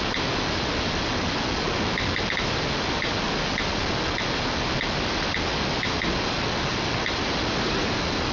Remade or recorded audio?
recorded